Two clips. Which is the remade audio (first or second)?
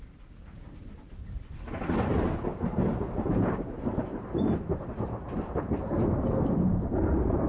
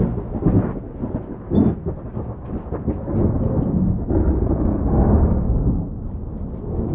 first